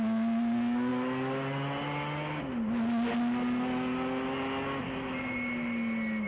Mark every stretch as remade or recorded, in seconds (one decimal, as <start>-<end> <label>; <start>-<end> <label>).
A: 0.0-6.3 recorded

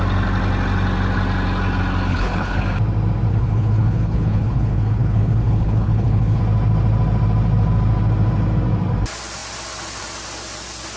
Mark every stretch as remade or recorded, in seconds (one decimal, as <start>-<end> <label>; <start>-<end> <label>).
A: 0.0-2.1 recorded; 2.1-2.6 remade; 2.6-3.3 recorded; 3.3-6.4 remade; 6.4-11.0 recorded

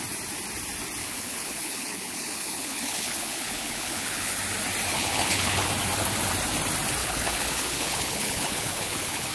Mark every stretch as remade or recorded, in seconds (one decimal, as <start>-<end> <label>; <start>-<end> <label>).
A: 0.0-1.0 recorded; 1.0-4.4 remade; 4.4-4.9 recorded; 4.9-5.7 remade; 5.7-7.0 recorded; 7.0-9.3 remade

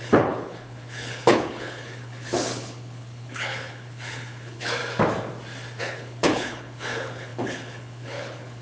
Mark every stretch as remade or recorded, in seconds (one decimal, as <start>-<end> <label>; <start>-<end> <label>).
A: 0.0-4.8 remade; 4.8-5.8 recorded; 5.8-8.6 remade

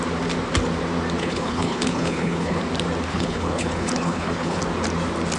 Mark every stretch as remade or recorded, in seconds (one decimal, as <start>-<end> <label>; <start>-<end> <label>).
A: 0.0-1.2 recorded; 1.2-2.6 remade; 2.6-3.1 recorded; 3.1-4.6 remade; 4.6-5.4 recorded

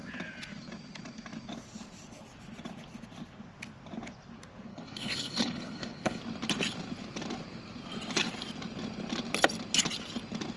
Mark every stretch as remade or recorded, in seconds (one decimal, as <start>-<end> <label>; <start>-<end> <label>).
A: 0.0-4.7 recorded; 4.7-6.2 remade; 6.2-10.6 recorded

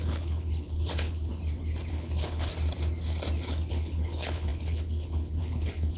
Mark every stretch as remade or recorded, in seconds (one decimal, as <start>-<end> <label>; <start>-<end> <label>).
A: 0.0-1.3 remade; 1.3-1.9 recorded; 1.9-2.5 remade; 2.5-3.7 recorded; 3.7-6.0 remade

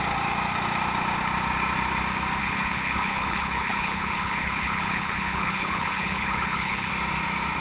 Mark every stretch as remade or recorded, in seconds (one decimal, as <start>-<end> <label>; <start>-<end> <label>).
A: 0.0-2.4 recorded; 2.4-6.9 remade; 6.9-7.6 recorded